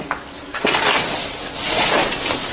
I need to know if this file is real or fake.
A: real